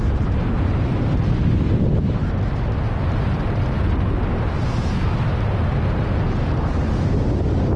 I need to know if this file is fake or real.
real